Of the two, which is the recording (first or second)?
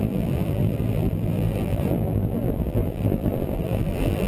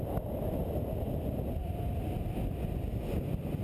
second